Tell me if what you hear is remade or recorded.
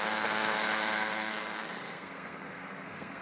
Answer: remade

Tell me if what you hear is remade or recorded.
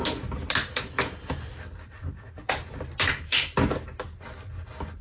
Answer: recorded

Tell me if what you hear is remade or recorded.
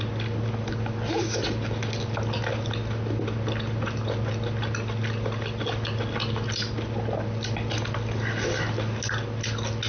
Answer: recorded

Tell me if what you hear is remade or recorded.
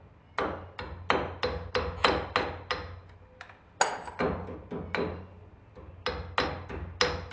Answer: recorded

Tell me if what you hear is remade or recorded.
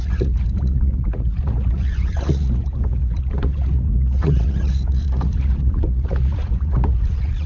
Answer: remade